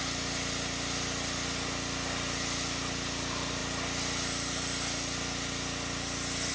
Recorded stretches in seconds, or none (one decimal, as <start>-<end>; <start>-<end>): 0.0-6.5